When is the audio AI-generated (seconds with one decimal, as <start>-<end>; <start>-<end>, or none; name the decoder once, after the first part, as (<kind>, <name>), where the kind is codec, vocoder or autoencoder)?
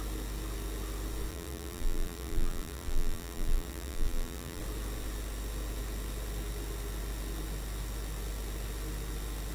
1.3-4.6 (vocoder, BigVGAN v2)